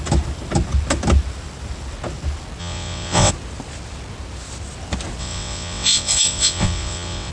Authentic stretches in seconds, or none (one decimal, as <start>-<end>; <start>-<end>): 0.0-2.6; 3.3-5.2